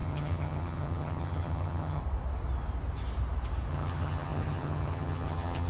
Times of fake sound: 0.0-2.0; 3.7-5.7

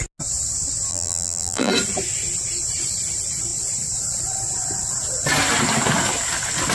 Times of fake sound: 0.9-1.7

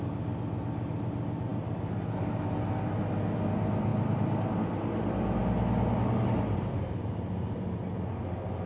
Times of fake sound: none

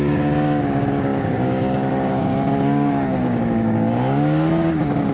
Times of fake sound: 0.0-5.1

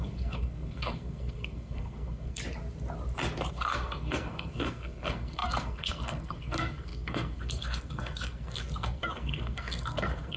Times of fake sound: 0.0-2.4; 3.5-10.4

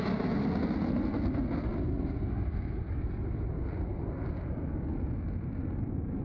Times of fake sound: none